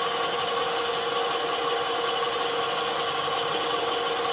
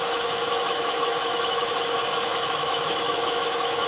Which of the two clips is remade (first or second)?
second